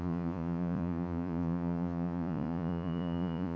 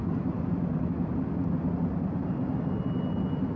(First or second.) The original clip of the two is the second